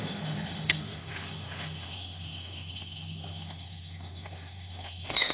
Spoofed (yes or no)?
yes